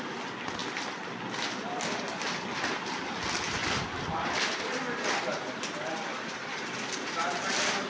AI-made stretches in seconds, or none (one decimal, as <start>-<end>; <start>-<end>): none

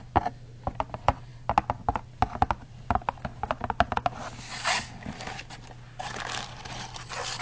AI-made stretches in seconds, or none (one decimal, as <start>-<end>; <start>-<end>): none

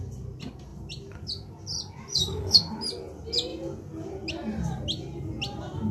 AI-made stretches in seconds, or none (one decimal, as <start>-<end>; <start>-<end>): 2.1-2.6

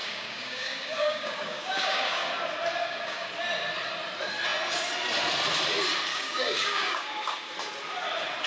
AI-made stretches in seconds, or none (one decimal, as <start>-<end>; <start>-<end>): 0.0-2.3; 2.8-3.3; 6.1-7.5

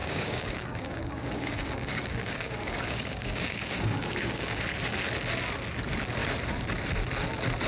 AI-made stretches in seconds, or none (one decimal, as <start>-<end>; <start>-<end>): 0.0-4.6

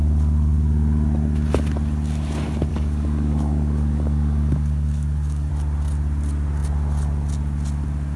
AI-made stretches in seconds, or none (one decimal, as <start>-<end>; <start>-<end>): 2.7-5.5

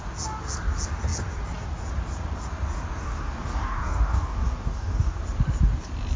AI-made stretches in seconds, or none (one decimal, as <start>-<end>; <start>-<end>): 3.0-5.2

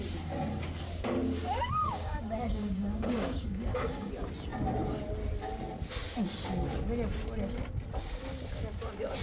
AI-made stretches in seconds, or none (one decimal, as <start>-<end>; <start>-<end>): 1.8-4.1